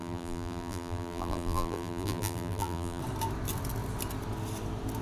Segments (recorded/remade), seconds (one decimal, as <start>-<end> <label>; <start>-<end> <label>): 0.0-3.0 remade; 3.0-5.0 recorded